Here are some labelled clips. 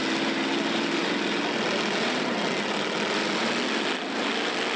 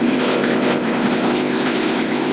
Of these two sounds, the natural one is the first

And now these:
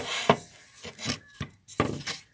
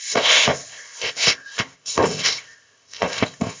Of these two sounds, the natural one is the first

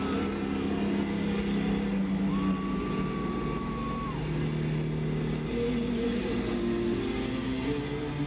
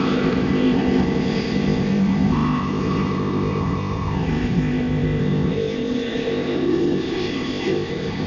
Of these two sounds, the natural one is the first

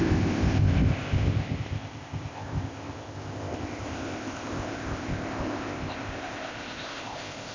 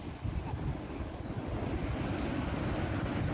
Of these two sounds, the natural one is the second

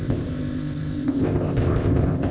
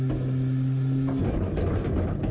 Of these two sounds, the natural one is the second